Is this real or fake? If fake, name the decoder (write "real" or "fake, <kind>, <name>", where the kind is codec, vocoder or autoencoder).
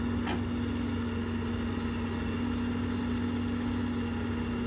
real